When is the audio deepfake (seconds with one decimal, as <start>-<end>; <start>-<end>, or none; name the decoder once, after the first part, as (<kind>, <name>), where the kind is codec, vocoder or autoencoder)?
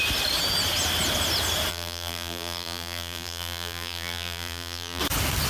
1.7-5.0 (vocoder, BigVGAN v2)